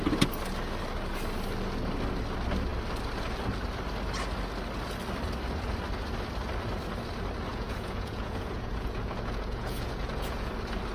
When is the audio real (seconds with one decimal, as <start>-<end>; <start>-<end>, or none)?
0.0-7.5; 10.5-10.9